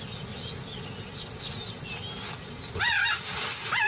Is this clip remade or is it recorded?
recorded